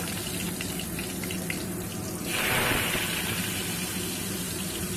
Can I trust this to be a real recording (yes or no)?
yes